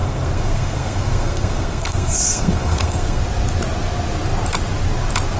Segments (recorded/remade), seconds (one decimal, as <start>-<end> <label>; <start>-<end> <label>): 0.0-3.2 remade; 3.2-5.4 recorded